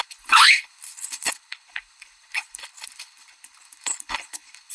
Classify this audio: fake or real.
fake